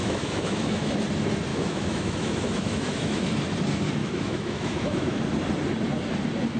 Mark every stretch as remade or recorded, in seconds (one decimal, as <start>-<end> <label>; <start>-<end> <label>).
0.0-0.9 remade; 0.9-1.5 recorded; 1.5-3.3 remade; 3.3-4.0 recorded; 4.0-5.2 remade; 5.2-6.6 recorded